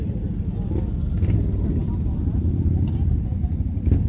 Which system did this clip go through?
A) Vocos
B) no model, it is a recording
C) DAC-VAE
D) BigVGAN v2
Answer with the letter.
B